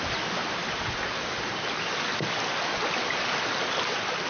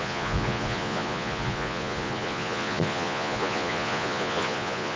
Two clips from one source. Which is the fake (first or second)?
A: second